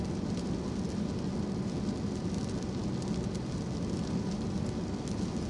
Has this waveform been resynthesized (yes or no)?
no